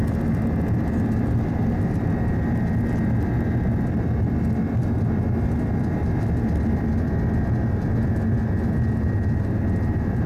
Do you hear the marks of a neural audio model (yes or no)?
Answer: no